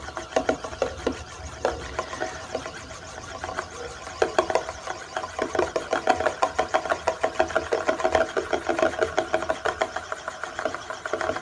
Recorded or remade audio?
recorded